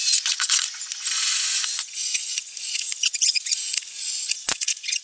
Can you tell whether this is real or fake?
fake